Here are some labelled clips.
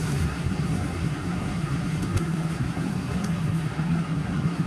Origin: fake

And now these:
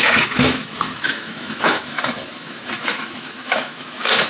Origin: fake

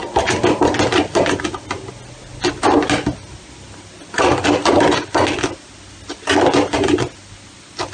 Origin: real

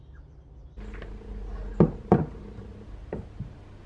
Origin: fake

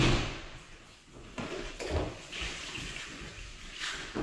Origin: fake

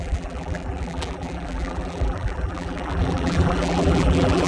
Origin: fake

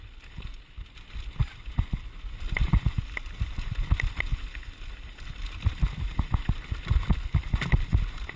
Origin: real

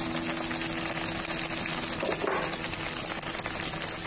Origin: real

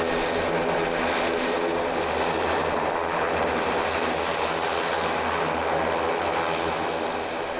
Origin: real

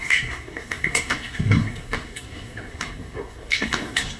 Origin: fake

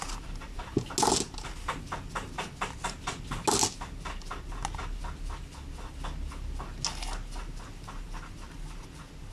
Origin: real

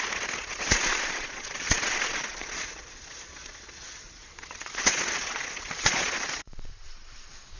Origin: fake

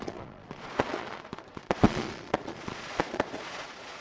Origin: fake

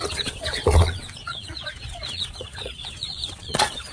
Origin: fake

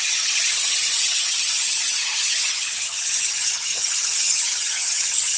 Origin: fake